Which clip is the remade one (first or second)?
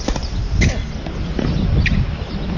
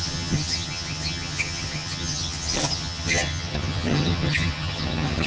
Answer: second